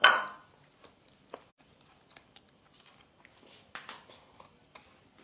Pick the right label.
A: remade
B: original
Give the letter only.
B